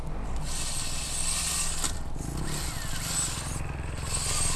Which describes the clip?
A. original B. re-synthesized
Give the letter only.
A